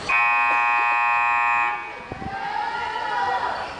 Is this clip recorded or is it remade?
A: recorded